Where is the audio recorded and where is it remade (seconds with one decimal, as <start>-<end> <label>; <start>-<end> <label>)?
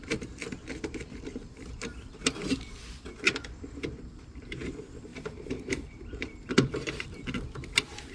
0.0-5.1 recorded; 5.1-6.1 remade; 6.1-8.1 recorded